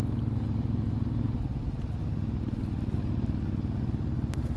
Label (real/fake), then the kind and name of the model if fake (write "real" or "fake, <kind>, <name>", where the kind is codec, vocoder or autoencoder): real